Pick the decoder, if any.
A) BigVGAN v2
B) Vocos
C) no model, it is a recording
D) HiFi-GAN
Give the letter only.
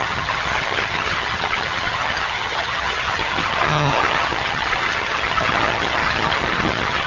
D